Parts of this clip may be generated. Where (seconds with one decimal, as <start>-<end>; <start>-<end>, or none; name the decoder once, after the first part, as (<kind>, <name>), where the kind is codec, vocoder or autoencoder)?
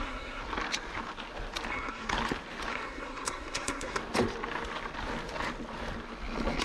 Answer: 0.0-0.4 (codec, SNAC); 1.7-2.1; 2.7-4.0